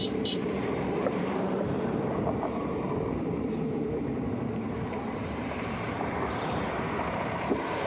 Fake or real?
fake